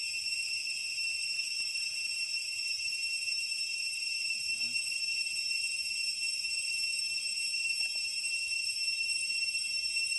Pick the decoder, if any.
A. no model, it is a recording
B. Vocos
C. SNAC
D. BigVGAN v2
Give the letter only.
D